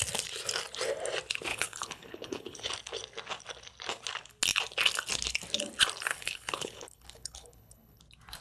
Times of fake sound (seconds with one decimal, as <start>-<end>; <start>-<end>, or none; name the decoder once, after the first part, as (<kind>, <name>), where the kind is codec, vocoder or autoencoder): 1.5-2.7 (codec, HILCodec); 6.1-8.0